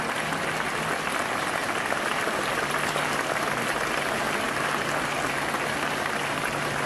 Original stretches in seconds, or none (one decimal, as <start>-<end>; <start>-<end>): 0.0-6.9